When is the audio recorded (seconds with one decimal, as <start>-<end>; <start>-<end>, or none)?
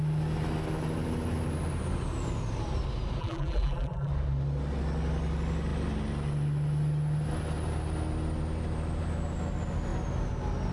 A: 0.0-3.2; 4.1-10.7